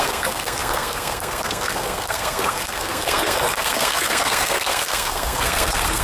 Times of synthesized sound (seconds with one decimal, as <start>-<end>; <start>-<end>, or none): 0.0-6.0